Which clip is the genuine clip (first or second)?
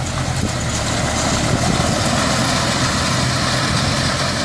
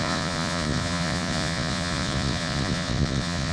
first